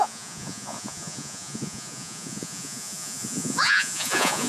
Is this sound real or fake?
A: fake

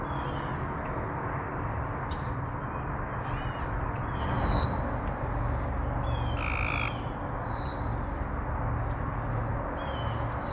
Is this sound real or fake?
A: real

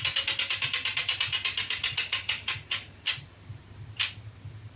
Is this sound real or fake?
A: real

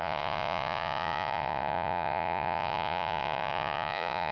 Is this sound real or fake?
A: fake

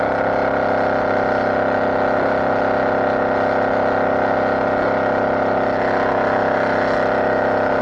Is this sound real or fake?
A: real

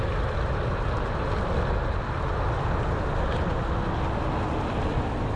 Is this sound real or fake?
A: real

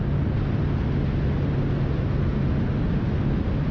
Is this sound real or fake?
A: real